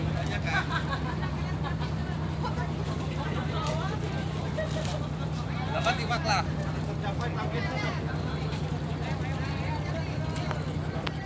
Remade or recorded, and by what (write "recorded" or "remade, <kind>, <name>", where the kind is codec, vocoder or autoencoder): recorded